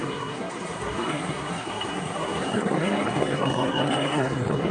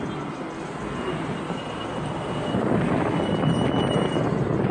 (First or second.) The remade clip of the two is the first